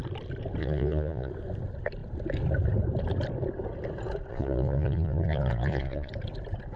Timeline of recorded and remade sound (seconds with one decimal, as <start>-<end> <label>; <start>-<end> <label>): 0.0-0.6 recorded; 0.6-1.3 remade; 1.3-4.3 recorded; 4.3-6.1 remade; 6.1-6.8 recorded